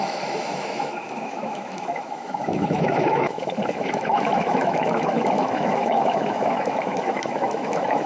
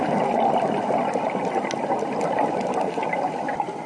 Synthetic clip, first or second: first